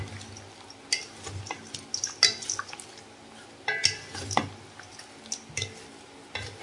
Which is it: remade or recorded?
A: recorded